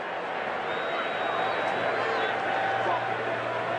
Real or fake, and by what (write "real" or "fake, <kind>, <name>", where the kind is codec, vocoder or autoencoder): real